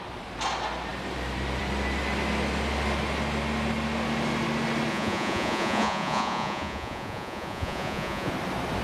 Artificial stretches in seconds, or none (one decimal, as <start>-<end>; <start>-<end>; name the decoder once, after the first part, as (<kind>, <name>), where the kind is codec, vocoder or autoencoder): 4.9-8.3 (vocoder, Vocos)